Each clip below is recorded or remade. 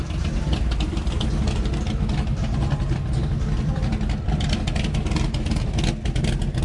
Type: recorded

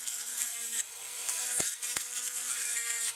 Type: remade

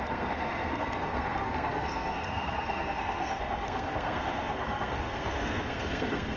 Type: remade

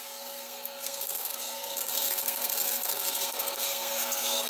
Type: remade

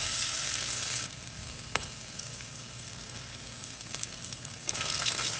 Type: remade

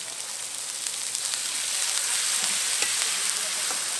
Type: recorded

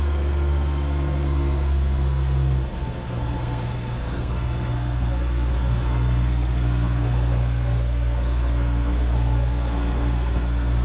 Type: remade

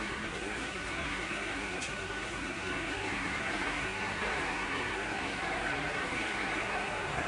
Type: remade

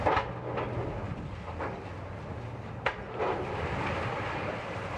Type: recorded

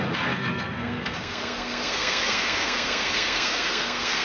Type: remade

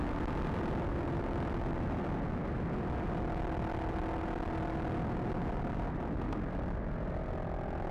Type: recorded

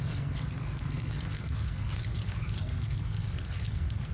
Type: remade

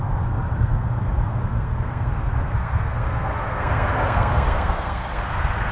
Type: remade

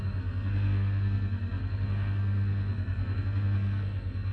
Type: remade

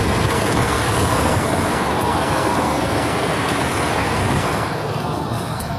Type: remade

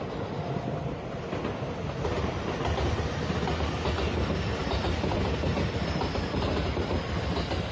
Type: recorded